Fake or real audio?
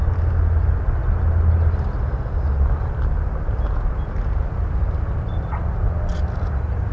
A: real